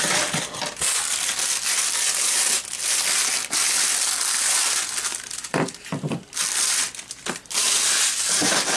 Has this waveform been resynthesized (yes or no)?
no